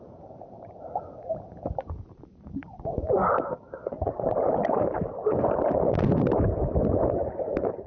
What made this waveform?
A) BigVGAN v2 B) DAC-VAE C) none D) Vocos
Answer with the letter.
A